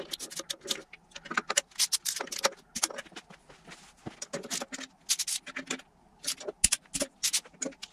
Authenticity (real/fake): real